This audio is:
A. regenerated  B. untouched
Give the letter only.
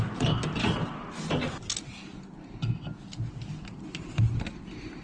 B